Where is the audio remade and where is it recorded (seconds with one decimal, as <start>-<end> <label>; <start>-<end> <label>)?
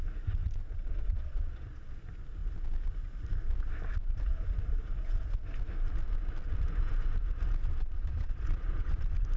0.0-0.6 recorded; 0.6-1.9 remade; 1.9-7.7 recorded; 7.7-9.0 remade; 9.0-9.4 recorded